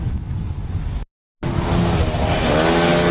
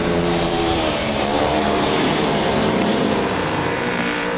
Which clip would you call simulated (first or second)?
second